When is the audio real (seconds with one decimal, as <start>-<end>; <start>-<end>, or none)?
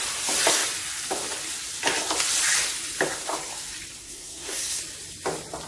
0.0-4.0; 4.8-5.7